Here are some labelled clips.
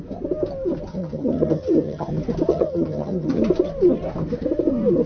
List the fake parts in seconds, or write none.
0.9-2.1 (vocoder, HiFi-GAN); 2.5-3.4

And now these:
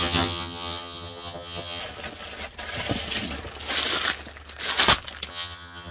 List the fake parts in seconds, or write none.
0.0-1.8 (vocoder, HiFi-GAN); 5.3-5.9

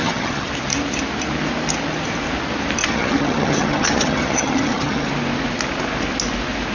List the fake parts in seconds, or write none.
0.0-0.5 (vocoder, HiFi-GAN); 2.8-5.1

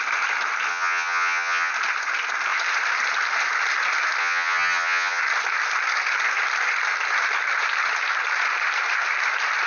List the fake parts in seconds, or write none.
0.7-1.7 (vocoder, HiFi-GAN); 4.2-5.2

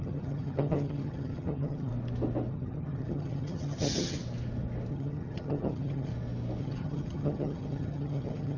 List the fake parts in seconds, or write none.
0.0-1.9 (vocoder, HiFi-GAN); 2.5-4.2; 4.9-6.1; 6.6-8.6

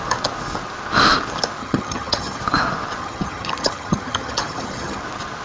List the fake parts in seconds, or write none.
1.6-2.4 (vocoder, HiFi-GAN); 3.0-5.0

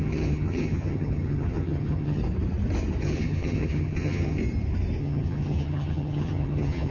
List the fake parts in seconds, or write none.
0.0-2.2 (vocoder, HiFi-GAN); 3.0-4.4; 5.0-6.9

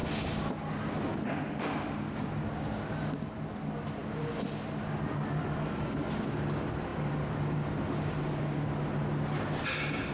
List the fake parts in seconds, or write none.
none